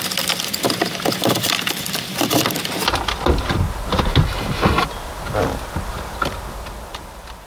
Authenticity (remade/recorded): remade